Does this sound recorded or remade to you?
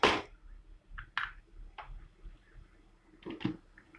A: recorded